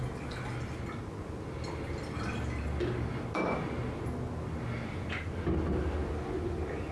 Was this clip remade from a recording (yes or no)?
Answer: no